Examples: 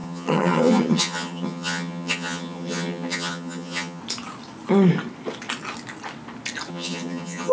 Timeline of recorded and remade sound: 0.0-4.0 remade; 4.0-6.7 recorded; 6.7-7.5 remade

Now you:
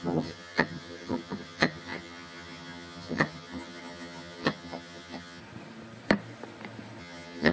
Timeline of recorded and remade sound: 0.0-5.4 remade; 5.4-7.0 recorded; 7.0-7.5 remade

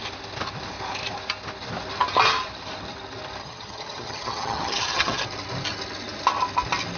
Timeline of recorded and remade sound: 0.0-3.4 recorded; 3.4-5.2 remade; 5.2-7.0 recorded

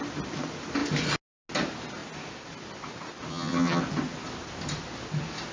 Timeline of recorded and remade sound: 0.0-3.3 recorded; 3.3-3.8 remade; 3.8-5.5 recorded

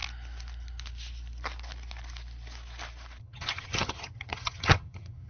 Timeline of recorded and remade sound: 0.0-3.2 recorded; 3.2-5.3 remade